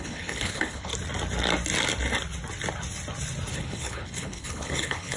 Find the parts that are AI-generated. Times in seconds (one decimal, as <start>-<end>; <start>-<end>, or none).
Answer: 0.0-0.9; 3.5-5.2